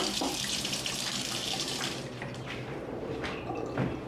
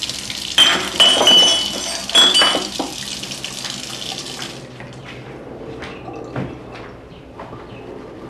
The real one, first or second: second